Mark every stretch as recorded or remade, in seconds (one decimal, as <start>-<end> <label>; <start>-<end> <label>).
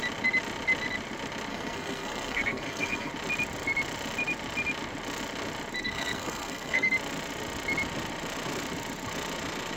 0.0-1.5 recorded; 1.5-3.1 remade; 3.1-5.8 recorded; 5.8-6.9 remade; 6.9-9.8 recorded